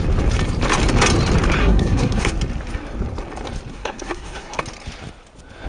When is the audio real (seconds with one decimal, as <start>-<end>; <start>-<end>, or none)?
0.0-1.6; 2.3-3.7; 4.6-5.7